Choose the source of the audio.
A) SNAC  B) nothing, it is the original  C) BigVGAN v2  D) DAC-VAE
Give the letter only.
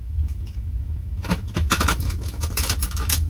D